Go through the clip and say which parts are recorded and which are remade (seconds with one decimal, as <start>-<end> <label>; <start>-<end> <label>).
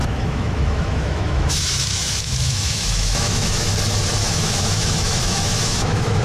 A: 0.0-3.7 remade; 3.7-4.2 recorded; 4.2-6.2 remade